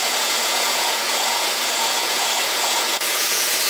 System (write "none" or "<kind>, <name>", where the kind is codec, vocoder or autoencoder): vocoder, Vocos